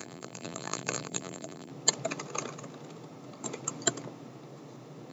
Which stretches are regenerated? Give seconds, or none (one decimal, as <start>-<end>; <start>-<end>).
0.0-1.7